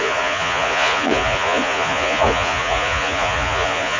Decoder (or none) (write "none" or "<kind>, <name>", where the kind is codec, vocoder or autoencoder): vocoder, Vocos